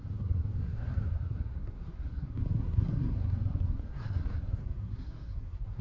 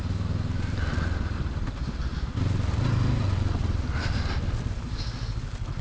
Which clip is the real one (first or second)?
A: second